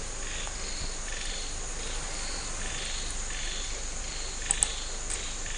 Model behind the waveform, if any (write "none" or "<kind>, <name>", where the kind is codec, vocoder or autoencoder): none